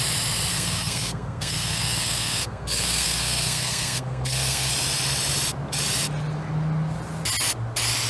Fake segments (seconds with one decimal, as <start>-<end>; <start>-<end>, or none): 0.5-4.7

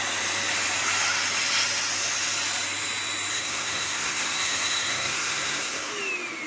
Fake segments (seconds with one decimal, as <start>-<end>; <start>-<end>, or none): 3.3-5.9

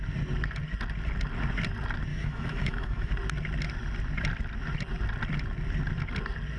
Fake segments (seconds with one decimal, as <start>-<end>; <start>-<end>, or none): 2.1-3.1

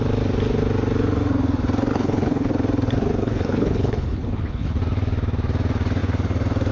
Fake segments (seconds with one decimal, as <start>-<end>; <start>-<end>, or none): 1.9-2.5; 3.2-4.8